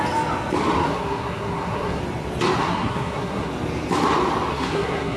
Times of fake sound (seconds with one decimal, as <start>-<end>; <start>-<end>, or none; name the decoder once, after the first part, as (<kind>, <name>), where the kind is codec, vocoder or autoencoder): 0.8-2.0 (codec, SNAC); 2.6-3.5; 4.5-5.2

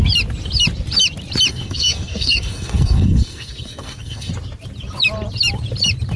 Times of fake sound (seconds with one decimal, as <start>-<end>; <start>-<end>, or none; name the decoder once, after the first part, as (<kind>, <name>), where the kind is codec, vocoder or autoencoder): 1.5-4.3 (codec, SNAC)

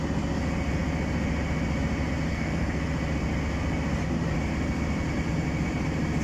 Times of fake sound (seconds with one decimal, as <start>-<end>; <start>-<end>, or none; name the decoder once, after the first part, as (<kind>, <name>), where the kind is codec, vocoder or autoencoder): 2.3-2.8 (codec, SNAC)

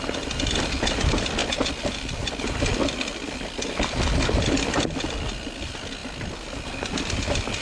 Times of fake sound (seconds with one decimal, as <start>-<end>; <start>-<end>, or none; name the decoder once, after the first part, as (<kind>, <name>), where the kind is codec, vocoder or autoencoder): none

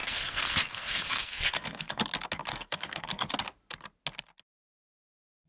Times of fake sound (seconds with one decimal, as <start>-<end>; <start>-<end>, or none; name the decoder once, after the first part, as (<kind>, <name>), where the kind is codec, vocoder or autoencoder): 0.0-2.0 (codec, SNAC); 2.5-3.3

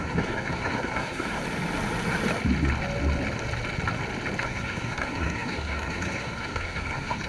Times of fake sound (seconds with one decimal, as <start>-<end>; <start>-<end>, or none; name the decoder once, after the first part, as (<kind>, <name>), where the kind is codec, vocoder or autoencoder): 0.0-1.4 (codec, SNAC); 4.4-7.3

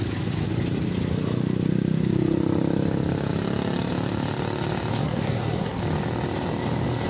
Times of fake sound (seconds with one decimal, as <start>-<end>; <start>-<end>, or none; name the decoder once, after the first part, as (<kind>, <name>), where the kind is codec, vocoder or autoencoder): 5.0-5.8 (codec, SNAC)